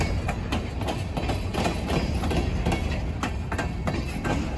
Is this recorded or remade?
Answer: recorded